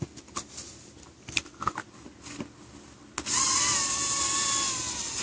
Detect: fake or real real